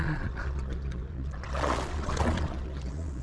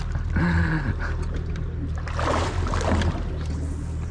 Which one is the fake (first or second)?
first